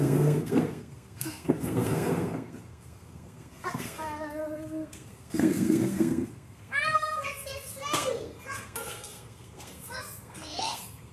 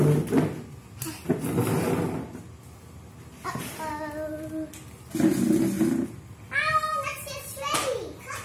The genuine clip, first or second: second